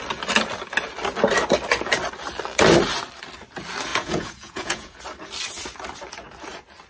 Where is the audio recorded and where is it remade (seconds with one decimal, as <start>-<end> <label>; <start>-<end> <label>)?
0.0-3.9 recorded; 3.9-5.0 remade; 5.0-6.9 recorded

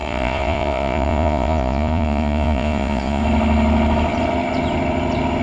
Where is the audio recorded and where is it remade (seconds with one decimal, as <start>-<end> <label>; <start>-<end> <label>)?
0.0-3.2 remade; 3.2-5.4 recorded